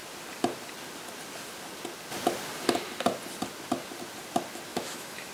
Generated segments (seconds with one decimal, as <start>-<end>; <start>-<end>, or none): 4.7-5.3